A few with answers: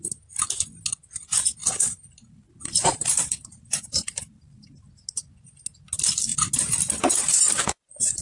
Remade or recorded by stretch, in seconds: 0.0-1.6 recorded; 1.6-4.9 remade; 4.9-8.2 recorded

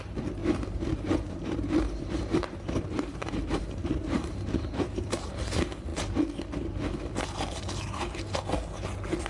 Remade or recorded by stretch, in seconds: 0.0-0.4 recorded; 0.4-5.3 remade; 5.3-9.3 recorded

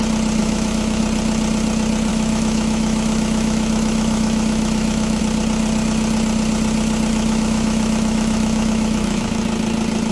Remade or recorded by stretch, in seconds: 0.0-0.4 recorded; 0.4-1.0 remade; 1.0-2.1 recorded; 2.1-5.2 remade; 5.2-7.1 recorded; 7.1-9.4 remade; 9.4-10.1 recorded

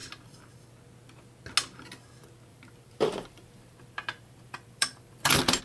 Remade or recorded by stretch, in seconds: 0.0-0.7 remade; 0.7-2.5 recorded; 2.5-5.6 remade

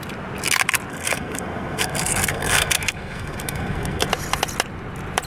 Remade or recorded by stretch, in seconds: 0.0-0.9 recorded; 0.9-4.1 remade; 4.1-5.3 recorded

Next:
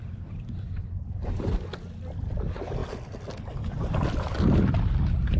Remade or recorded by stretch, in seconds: 0.0-5.4 recorded